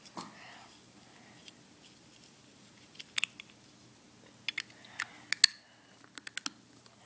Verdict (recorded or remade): recorded